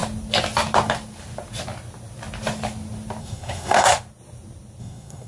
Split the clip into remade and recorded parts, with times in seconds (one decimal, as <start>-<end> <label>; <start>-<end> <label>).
0.0-3.2 recorded; 3.2-3.9 remade; 3.9-4.8 recorded; 4.8-5.3 remade